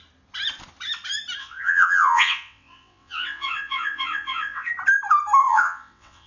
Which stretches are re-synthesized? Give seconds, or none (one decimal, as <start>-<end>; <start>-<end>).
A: 1.4-4.7; 5.4-6.3